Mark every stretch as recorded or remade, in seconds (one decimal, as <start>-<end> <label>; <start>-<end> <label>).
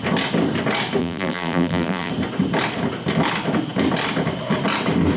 0.0-1.0 recorded; 1.0-2.1 remade; 2.1-5.2 recorded